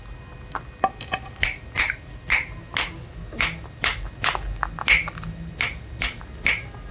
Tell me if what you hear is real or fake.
real